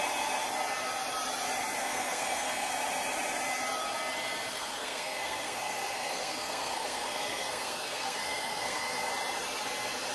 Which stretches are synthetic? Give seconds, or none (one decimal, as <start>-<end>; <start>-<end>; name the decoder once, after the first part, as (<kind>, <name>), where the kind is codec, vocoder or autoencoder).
1.8-2.7 (codec, SNAC); 4.5-9.1